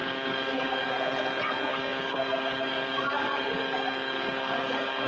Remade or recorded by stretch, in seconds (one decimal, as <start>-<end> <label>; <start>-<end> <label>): 0.0-0.9 remade; 0.9-1.7 recorded; 1.7-5.1 remade